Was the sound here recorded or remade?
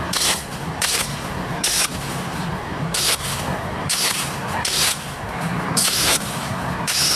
remade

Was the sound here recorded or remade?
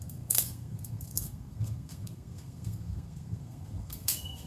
remade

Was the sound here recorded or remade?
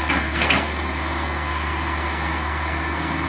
remade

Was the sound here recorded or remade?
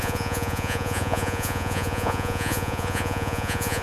remade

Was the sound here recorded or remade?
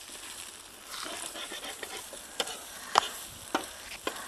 remade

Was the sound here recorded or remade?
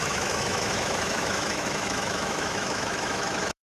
remade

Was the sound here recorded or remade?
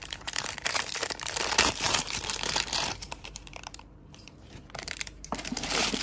remade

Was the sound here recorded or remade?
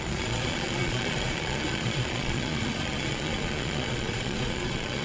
remade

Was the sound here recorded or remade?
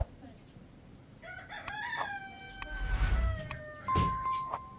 recorded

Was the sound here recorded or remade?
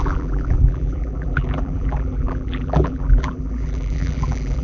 remade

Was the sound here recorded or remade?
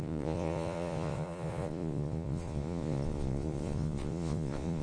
remade